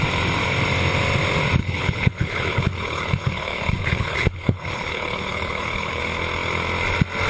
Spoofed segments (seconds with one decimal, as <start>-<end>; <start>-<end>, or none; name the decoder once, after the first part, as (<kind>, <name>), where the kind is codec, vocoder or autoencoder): 1.6-6.0 (codec, HILCodec)

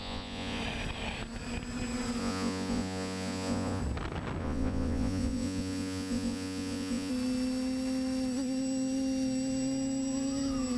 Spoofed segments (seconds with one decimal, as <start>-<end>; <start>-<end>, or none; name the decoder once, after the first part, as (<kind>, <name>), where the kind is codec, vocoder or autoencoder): 0.0-0.6 (vocoder, Vocos); 2.2-3.8; 4.4-7.1

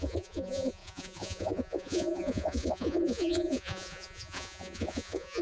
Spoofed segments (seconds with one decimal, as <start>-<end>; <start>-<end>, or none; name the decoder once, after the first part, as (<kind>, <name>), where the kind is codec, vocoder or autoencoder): 0.0-5.4 (vocoder, Vocos)

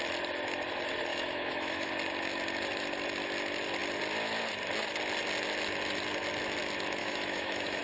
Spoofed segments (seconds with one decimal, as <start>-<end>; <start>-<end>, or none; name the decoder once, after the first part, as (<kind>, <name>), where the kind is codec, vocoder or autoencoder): 1.1-1.9 (autoencoder, DAC-VAE); 7.0-7.8